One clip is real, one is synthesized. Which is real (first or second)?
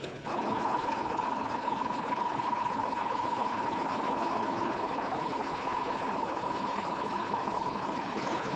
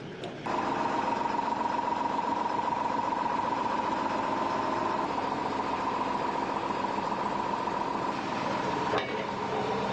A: second